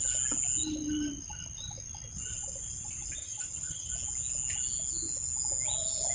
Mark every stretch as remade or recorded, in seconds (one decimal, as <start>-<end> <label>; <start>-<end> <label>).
0.0-3.2 recorded; 3.2-3.9 remade; 3.9-6.1 recorded